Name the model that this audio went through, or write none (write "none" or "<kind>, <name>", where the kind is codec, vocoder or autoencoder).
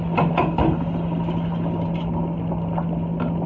none